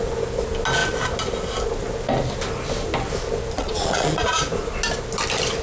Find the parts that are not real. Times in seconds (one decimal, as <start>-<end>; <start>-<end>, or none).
3.6-4.4